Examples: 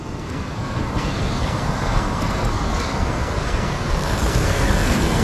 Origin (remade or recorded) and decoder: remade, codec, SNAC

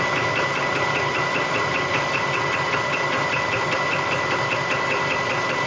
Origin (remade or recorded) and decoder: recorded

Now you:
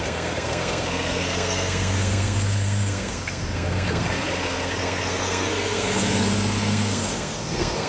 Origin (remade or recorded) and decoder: remade, codec, SNAC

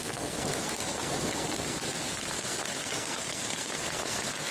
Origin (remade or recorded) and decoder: remade, codec, SNAC